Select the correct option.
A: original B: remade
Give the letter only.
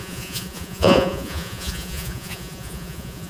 B